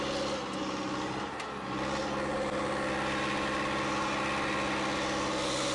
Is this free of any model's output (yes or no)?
yes